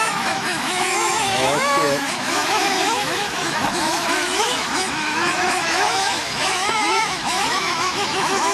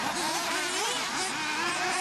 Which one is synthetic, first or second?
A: first